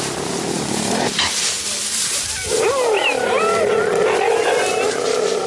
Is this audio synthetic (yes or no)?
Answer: no